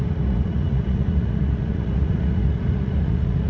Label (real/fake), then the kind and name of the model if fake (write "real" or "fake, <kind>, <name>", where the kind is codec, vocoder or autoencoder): fake, vocoder, Vocos